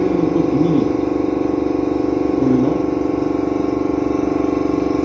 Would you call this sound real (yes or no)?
yes